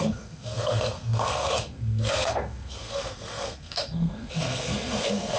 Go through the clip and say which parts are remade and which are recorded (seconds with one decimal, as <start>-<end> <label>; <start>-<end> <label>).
0.0-5.4 remade

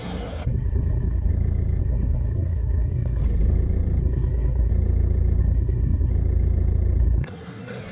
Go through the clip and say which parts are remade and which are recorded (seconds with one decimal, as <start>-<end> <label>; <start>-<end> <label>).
0.0-1.3 remade; 1.3-1.8 recorded; 1.8-3.2 remade; 3.2-4.0 recorded; 4.0-4.7 remade; 4.7-5.4 recorded; 5.4-6.1 remade; 6.1-7.0 recorded; 7.0-7.9 remade

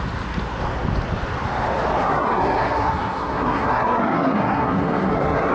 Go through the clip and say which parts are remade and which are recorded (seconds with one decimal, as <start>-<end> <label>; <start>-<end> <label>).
0.0-2.0 recorded; 2.0-5.5 remade

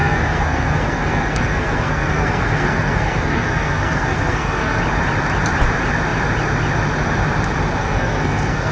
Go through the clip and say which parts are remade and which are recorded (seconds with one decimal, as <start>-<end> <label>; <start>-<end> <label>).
0.0-4.8 remade; 4.8-7.8 recorded; 7.8-8.7 remade

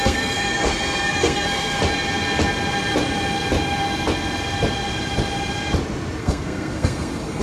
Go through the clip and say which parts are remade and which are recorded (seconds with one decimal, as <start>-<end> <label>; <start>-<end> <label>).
0.0-1.8 remade; 1.8-6.2 recorded; 6.2-7.4 remade

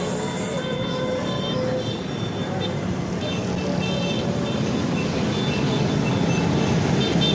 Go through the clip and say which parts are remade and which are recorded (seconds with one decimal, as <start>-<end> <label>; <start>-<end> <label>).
0.0-7.3 recorded